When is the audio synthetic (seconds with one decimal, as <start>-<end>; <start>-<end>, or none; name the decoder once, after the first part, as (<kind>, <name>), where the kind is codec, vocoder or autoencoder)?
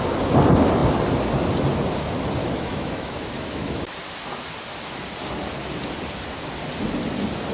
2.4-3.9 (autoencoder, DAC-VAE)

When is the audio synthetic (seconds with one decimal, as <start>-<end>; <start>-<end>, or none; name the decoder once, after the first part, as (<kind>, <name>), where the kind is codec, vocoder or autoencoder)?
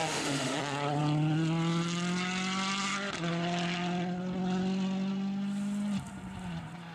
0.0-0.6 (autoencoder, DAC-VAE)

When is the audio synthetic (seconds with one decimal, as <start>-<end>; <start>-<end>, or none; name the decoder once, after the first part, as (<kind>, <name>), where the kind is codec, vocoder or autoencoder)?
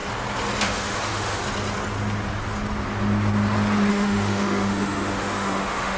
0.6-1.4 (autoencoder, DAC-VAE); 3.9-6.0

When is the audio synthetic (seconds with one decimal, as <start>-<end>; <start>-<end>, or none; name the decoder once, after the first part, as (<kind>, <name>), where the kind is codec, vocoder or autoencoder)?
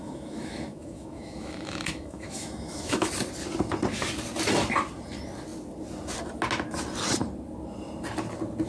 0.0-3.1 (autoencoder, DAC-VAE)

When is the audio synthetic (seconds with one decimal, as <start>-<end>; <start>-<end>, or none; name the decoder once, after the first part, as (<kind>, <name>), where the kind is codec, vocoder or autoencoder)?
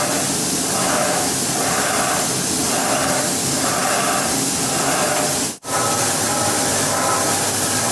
0.8-1.3 (autoencoder, DAC-VAE)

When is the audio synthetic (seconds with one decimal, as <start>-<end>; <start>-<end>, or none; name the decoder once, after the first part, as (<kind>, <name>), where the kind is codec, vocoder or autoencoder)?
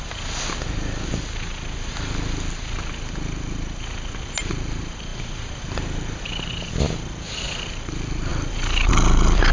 none